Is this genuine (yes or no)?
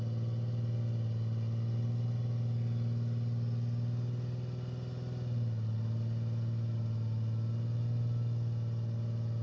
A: yes